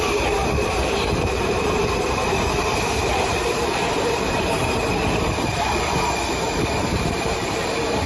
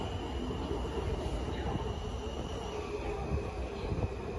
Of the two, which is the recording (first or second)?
second